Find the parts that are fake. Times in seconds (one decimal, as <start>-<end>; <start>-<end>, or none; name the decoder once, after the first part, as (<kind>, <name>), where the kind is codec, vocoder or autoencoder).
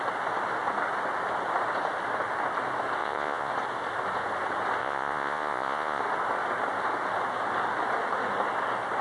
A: 3.0-3.5 (vocoder, Vocos); 4.8-6.0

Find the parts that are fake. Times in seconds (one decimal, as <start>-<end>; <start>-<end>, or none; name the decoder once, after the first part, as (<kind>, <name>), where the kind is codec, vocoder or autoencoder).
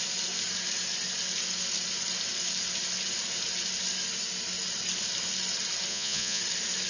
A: 5.9-6.4 (vocoder, Vocos)